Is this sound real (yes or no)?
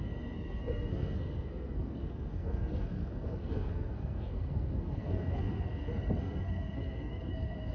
no